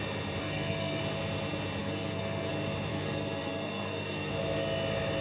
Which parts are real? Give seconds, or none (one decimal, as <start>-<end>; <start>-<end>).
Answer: 0.0-0.4; 1.0-1.8; 2.5-2.9; 4.3-5.2